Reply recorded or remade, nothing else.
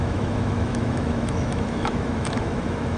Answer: remade